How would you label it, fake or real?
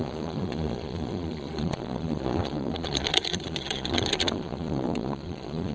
fake